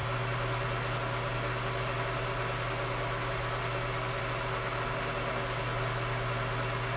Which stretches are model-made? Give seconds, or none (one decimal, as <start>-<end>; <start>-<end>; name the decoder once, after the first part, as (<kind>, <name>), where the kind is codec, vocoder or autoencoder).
none

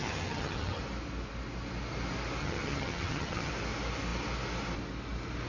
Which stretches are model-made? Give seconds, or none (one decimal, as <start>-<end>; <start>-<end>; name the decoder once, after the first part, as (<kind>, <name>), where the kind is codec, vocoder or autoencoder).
0.0-0.8 (vocoder, HiFi-GAN); 2.4-3.5

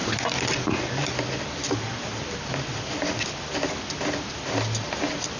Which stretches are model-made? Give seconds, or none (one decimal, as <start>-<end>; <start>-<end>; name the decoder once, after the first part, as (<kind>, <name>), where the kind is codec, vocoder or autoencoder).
none